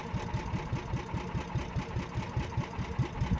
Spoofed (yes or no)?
no